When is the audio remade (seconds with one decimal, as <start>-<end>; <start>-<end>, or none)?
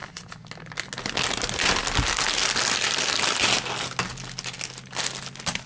none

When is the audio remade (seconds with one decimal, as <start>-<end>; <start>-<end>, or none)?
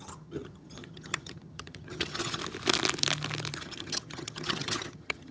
0.0-2.4; 3.6-5.3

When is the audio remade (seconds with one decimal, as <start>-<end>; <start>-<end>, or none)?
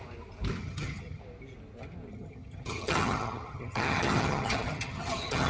0.6-1.2; 2.1-5.5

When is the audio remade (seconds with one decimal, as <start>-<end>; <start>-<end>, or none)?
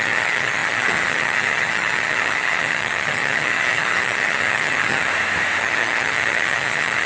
0.0-5.1; 5.6-7.1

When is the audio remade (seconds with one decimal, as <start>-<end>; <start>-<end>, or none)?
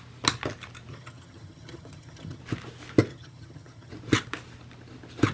0.9-2.4; 3.1-3.9